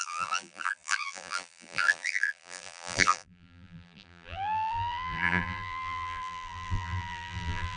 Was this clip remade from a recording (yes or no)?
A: yes